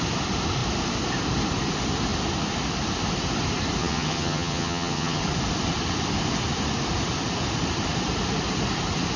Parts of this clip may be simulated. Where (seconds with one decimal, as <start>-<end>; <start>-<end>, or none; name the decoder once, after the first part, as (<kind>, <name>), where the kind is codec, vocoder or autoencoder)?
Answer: 3.8-5.2 (vocoder, HiFi-GAN)